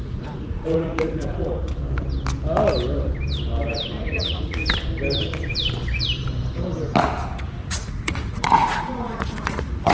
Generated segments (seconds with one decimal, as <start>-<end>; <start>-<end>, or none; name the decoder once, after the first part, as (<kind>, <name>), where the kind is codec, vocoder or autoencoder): 0.0-1.5 (vocoder, Vocos); 4.0-4.6; 7.7-9.9